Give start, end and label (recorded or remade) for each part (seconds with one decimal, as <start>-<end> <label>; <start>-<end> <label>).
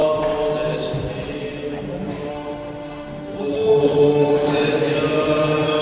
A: 0.0-2.3 recorded; 2.3-4.5 remade; 4.5-5.8 recorded